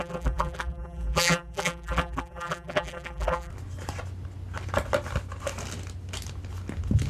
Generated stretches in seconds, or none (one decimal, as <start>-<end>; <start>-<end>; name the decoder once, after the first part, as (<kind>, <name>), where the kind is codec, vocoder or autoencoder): 0.0-3.5 (vocoder, BigVGAN v2)